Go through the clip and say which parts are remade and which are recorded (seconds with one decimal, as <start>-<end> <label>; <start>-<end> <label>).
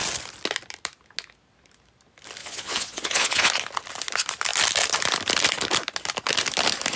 0.0-2.4 recorded; 2.4-3.5 remade; 3.5-7.0 recorded